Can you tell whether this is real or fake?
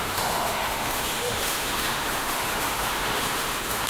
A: fake